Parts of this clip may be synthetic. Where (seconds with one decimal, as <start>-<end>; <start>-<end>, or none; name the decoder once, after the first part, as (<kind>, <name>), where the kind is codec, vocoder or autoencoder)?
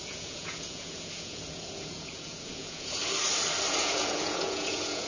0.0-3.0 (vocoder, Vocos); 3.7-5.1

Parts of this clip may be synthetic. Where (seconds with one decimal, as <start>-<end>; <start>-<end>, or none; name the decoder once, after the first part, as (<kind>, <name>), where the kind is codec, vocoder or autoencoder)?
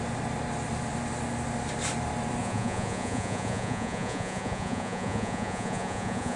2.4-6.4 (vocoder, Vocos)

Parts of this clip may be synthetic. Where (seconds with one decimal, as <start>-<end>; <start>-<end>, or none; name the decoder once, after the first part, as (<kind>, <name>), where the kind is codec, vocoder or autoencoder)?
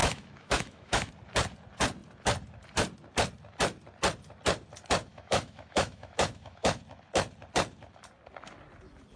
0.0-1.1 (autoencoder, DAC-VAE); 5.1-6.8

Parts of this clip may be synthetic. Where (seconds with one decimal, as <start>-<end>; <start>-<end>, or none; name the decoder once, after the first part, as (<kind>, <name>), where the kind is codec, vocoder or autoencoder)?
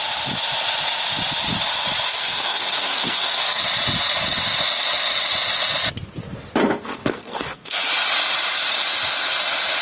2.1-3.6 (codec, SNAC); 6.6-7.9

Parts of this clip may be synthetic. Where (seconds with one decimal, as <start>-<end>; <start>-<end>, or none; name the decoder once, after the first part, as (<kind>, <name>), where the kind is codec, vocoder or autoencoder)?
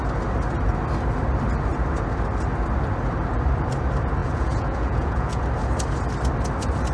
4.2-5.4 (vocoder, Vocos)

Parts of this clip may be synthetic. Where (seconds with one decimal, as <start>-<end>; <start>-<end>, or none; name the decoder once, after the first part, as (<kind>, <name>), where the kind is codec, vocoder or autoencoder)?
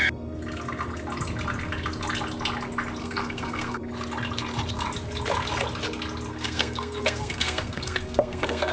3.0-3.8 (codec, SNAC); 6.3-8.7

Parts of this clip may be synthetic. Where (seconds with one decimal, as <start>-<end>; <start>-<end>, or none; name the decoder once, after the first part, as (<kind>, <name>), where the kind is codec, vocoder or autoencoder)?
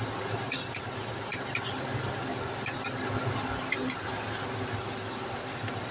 0.0-1.3 (vocoder, BigVGAN v2); 4.8-5.9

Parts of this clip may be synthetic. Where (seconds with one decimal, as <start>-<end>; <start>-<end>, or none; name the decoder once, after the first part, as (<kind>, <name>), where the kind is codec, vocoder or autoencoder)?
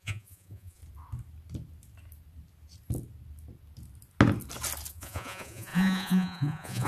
0.0-0.8 (vocoder, Vocos); 4.9-6.9